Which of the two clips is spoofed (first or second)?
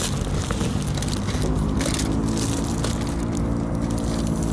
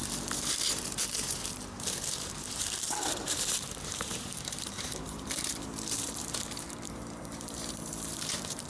second